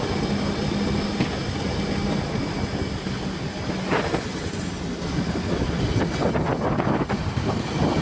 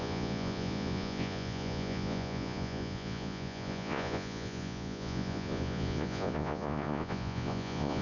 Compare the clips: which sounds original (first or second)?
first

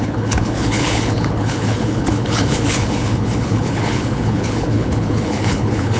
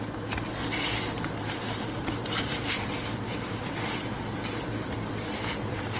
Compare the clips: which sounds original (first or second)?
second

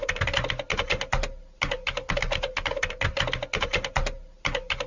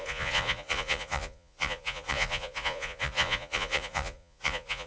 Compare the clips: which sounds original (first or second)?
first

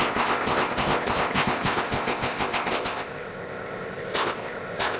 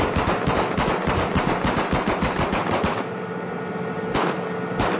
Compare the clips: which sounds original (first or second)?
second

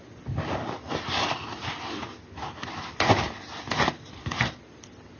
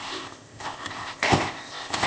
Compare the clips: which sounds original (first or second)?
first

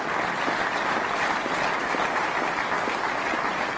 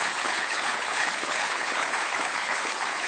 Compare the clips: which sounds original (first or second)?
first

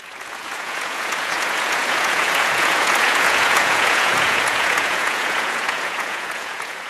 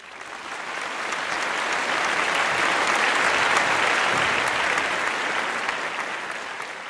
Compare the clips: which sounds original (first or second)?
second